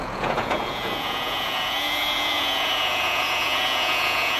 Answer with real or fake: fake